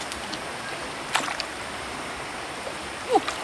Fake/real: real